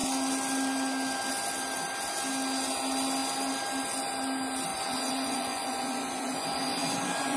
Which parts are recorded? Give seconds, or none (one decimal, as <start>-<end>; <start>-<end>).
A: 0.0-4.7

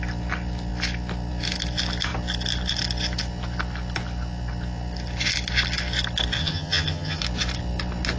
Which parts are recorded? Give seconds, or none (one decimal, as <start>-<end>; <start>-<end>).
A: 0.0-6.4; 7.2-8.2

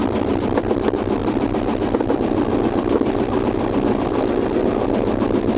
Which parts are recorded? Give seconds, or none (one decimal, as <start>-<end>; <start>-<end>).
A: 0.0-5.6